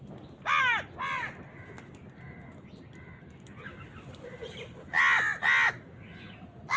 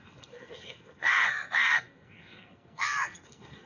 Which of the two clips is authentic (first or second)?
first